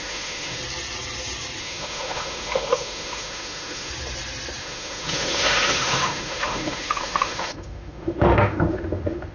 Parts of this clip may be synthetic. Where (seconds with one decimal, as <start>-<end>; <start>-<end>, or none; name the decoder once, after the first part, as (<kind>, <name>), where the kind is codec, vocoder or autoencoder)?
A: 0.0-0.6 (autoencoder, DAC-VAE); 1.6-3.9; 4.6-9.3